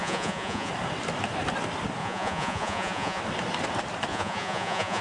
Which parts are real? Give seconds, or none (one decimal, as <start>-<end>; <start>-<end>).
0.7-2.0; 3.2-4.1